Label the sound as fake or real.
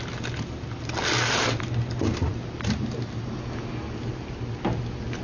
real